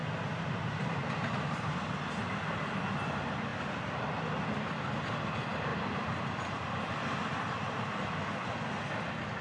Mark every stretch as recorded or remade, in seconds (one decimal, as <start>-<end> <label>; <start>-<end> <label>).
0.0-1.8 remade; 1.8-5.7 recorded; 5.7-7.9 remade; 7.9-9.4 recorded